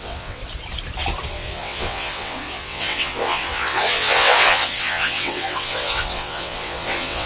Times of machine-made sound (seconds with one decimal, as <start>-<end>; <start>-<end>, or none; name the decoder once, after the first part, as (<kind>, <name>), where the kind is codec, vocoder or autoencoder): 0.0-0.4 (vocoder, WaveNeXt); 1.3-7.3

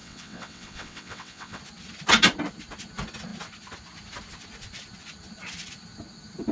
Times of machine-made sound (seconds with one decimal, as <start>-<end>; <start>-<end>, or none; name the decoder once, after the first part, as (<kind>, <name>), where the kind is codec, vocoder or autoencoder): 0.0-1.6 (vocoder, WaveNeXt)

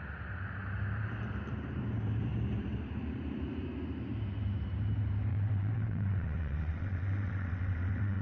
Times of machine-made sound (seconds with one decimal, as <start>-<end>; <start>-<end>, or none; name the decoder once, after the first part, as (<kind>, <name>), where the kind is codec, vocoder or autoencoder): 5.3-8.2 (vocoder, WaveNeXt)

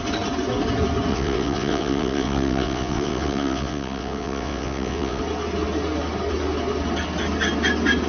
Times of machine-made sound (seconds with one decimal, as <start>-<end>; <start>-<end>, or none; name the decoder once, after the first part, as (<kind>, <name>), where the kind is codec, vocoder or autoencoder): 1.1-5.2 (vocoder, WaveNeXt)